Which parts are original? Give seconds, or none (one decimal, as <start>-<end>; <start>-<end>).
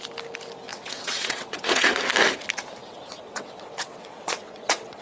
0.0-0.7; 2.0-2.8